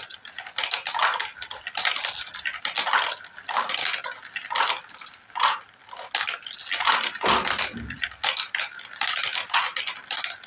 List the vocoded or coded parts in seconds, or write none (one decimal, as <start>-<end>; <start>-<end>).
none